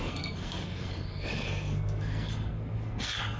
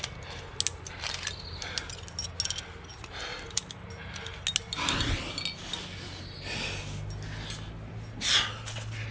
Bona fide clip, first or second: second